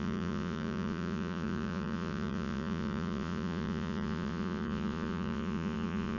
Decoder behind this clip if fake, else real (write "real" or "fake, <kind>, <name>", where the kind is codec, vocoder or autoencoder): fake, vocoder, Vocos